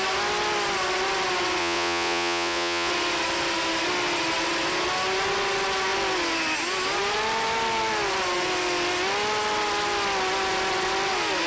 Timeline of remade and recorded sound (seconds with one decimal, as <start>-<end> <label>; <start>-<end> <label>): 0.0-1.6 recorded; 1.6-2.9 remade; 2.9-11.5 recorded